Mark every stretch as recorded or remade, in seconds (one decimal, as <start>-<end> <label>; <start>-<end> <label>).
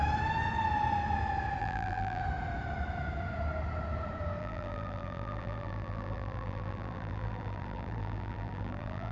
0.0-1.6 recorded; 1.6-2.2 remade; 2.2-4.4 recorded; 4.4-9.1 remade